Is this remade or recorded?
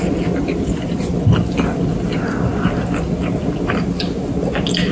recorded